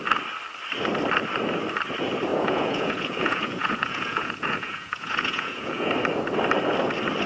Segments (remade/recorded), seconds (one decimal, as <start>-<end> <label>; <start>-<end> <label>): 0.0-2.3 recorded; 2.3-5.9 remade; 5.9-7.3 recorded